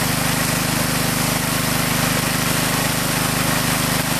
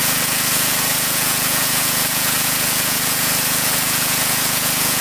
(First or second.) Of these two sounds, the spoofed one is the second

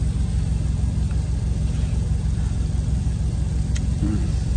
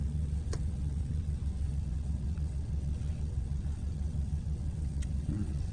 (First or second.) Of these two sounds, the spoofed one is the second